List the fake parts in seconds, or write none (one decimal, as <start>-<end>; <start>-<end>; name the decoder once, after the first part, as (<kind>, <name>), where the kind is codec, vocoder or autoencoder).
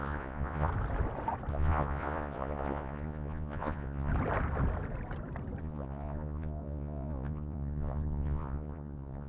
0.0-0.7 (vocoder, Vocos); 1.5-4.1; 5.6-9.3